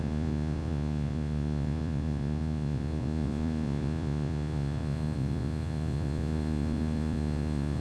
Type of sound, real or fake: fake